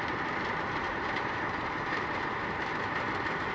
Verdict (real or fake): fake